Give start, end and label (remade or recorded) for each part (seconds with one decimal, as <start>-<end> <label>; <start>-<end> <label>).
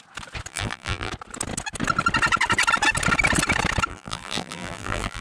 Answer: 0.0-0.5 recorded; 0.5-1.1 remade; 1.1-3.9 recorded; 3.9-5.2 remade